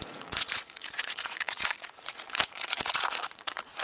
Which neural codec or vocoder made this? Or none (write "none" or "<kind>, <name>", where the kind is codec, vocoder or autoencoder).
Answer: vocoder, Vocos